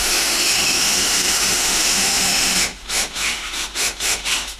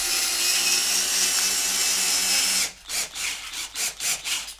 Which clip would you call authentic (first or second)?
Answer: second